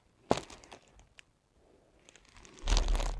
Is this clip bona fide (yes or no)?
yes